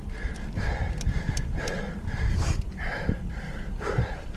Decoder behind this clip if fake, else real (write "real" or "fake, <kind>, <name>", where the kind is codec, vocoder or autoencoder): fake, vocoder, BigVGAN v2